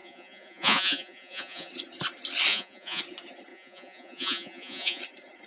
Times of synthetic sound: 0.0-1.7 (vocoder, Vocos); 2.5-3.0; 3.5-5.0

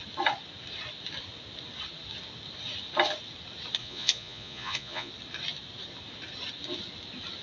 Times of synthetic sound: 3.8-5.1 (vocoder, Vocos)

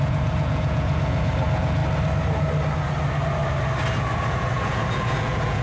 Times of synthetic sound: 0.0-1.8 (vocoder, Vocos); 4.4-5.6

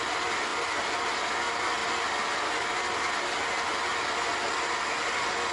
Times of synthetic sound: none

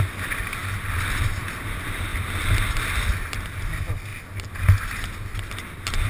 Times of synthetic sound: none

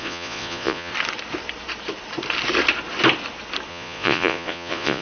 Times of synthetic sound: 0.0-0.9 (vocoder, Vocos); 3.7-5.0